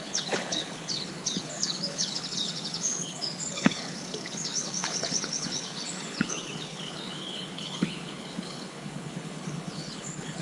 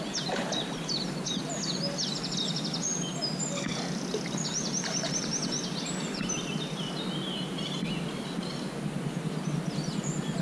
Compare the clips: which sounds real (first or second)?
second